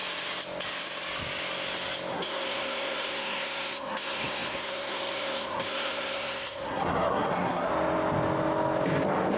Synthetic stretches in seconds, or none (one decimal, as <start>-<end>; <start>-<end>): 2.1-7.7